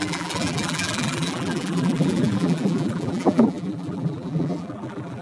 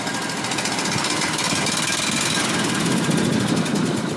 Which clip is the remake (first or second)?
first